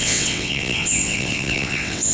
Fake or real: fake